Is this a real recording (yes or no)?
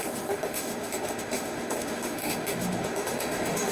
no